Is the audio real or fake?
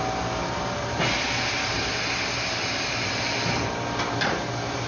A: real